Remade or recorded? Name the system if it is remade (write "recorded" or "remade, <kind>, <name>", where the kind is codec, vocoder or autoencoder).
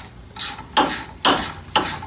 recorded